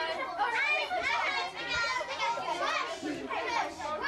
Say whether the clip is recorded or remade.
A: recorded